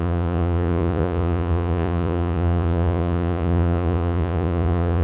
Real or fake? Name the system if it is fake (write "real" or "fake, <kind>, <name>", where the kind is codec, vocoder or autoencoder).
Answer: fake, vocoder, Vocos